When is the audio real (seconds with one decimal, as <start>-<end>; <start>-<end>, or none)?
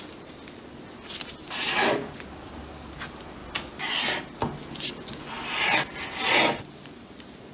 0.0-7.5